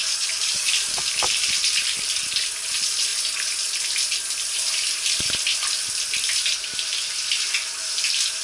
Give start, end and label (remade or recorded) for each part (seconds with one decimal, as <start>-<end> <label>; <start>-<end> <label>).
0.0-0.7 remade; 0.7-8.4 recorded

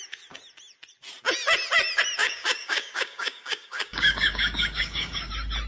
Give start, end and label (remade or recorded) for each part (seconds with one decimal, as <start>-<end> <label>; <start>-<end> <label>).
0.0-2.2 recorded; 2.2-5.3 remade; 5.3-5.7 recorded

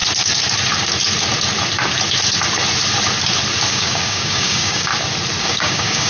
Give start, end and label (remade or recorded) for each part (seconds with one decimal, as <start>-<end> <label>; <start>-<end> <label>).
0.0-3.7 recorded; 3.7-4.9 remade; 4.9-5.4 recorded; 5.4-6.1 remade

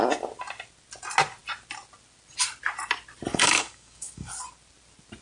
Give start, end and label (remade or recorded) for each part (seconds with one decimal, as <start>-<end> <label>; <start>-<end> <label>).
0.0-3.3 recorded; 3.3-4.3 remade; 4.3-5.2 recorded

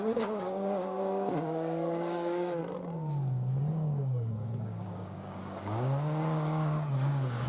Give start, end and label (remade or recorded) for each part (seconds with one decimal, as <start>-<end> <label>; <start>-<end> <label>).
0.0-2.6 remade; 2.6-3.7 recorded; 3.7-7.5 remade

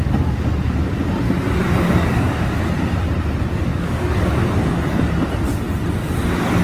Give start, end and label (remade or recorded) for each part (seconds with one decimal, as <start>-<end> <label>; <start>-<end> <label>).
0.0-1.6 recorded; 1.6-2.7 remade; 2.7-3.7 recorded; 3.7-5.1 remade; 5.1-6.6 recorded

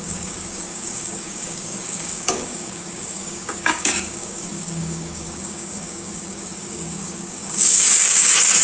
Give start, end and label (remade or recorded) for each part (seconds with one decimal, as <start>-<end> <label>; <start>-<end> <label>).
0.0-8.6 remade